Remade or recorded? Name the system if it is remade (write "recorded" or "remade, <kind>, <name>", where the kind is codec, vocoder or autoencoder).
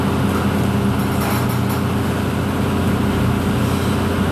recorded